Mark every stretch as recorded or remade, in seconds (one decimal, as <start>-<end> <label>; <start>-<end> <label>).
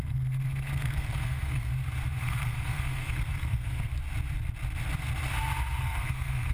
0.0-1.7 remade; 1.7-2.2 recorded; 2.2-3.9 remade; 3.9-5.8 recorded; 5.8-6.5 remade